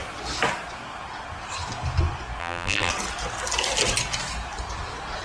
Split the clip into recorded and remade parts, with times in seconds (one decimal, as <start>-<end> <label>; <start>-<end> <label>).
0.0-2.4 recorded; 2.4-2.9 remade; 2.9-5.2 recorded